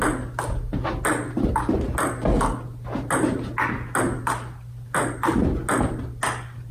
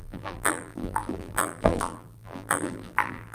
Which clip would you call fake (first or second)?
second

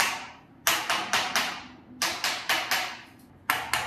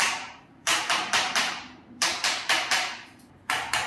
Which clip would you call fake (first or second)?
second